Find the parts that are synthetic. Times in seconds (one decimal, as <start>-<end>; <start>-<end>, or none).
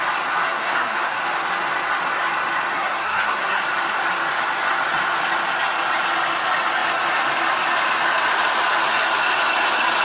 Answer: 0.4-1.2; 2.7-3.6